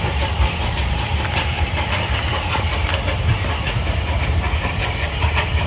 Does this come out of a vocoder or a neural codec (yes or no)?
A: no